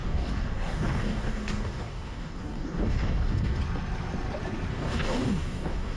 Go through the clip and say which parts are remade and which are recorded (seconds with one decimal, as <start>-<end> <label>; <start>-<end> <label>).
0.0-3.6 remade; 3.6-4.7 recorded; 4.7-6.0 remade